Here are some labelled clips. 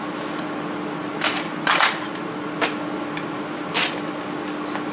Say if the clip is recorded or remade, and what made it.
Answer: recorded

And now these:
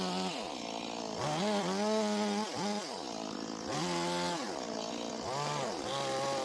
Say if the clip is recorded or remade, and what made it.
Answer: recorded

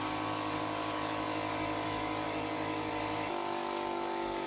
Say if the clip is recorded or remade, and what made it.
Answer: remade, codec, DAC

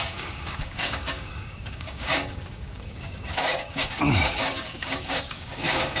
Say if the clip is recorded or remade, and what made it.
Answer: remade, codec, DAC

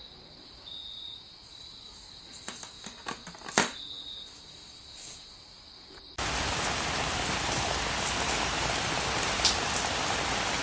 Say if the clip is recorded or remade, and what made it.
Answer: recorded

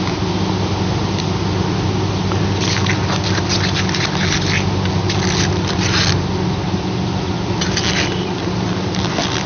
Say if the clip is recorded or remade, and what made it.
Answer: recorded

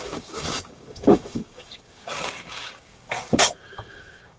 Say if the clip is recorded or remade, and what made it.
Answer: remade, codec, DAC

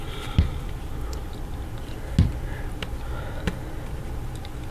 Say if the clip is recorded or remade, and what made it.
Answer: recorded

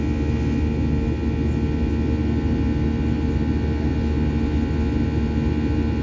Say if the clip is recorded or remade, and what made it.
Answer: recorded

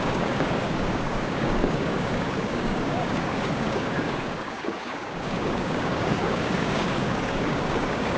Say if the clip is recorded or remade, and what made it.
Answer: remade, codec, DAC